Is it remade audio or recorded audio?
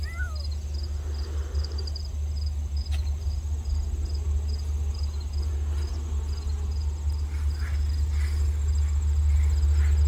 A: recorded